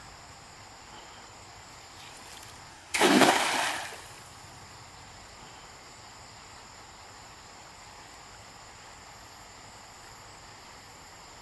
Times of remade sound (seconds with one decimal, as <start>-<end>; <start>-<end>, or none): 2.7-3.4